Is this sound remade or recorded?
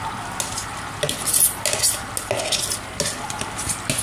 recorded